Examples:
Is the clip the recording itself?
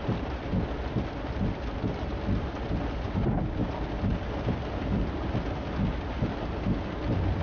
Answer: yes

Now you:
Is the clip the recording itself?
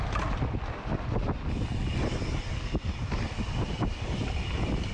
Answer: yes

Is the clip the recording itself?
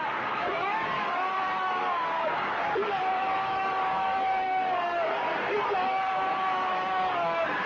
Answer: no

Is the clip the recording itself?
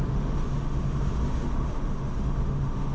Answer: no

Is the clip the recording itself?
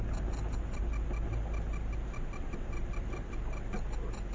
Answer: yes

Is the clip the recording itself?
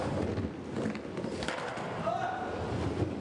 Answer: yes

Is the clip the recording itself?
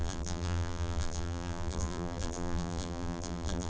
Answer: no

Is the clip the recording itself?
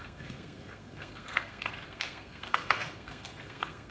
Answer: no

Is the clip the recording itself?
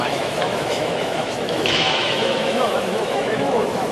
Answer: no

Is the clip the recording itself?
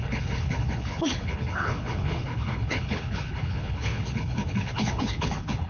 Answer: no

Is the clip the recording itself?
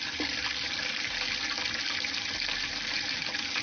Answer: yes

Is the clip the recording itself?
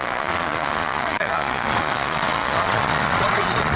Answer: no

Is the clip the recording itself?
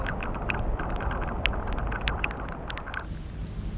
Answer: yes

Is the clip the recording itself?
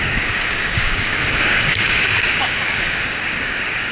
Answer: no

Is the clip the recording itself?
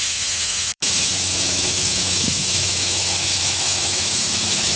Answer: no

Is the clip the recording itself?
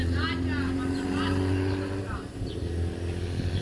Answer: yes